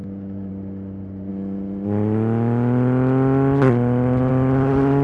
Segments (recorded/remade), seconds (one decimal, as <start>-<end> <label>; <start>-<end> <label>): 0.0-0.5 remade; 0.5-5.0 recorded